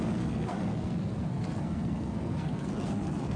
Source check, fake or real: fake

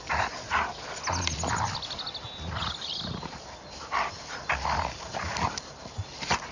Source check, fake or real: real